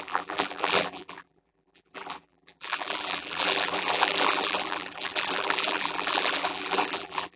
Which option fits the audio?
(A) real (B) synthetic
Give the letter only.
B